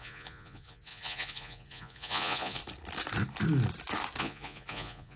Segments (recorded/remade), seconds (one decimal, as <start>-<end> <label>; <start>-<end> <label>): 0.0-2.6 remade; 2.6-4.2 recorded; 4.2-5.2 remade